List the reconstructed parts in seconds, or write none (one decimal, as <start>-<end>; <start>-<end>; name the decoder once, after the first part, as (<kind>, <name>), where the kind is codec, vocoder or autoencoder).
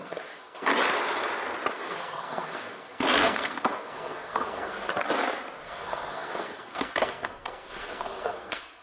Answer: 0.0-0.7 (codec, SNAC); 1.7-4.9; 5.6-8.8